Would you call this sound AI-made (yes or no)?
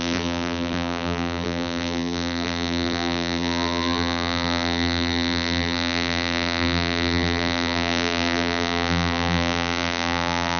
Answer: yes